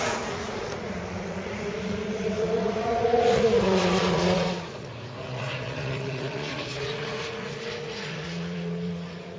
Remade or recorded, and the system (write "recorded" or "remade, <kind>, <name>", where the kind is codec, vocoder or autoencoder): remade, vocoder, Vocos